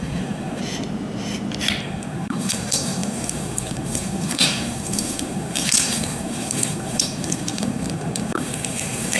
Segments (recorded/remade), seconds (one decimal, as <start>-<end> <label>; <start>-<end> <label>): 0.0-0.6 remade; 0.6-1.8 recorded; 1.8-9.2 remade